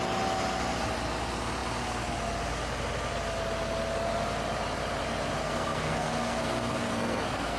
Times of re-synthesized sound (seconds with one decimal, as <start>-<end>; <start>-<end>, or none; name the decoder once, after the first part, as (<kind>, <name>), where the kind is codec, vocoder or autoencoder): 5.4-7.6 (codec, SNAC)